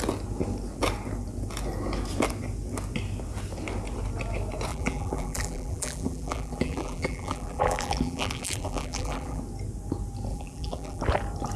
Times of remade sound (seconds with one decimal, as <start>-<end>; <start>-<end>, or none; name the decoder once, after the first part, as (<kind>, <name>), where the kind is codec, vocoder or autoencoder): 4.7-9.4 (vocoder, BigVGAN v2); 10.3-11.0